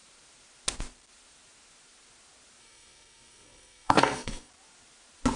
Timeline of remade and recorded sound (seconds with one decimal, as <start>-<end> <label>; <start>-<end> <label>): 0.0-2.6 recorded; 2.6-4.5 remade; 4.5-5.4 recorded